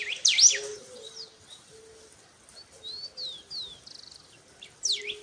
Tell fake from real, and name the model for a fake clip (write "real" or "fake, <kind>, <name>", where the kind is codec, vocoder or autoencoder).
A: real